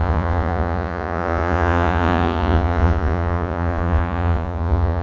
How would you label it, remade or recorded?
remade